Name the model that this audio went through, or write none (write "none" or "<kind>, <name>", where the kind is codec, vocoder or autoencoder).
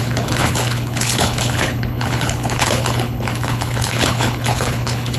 codec, HILCodec